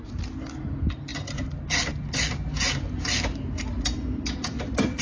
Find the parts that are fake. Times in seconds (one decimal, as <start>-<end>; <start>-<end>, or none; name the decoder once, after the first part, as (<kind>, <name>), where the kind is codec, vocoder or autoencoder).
none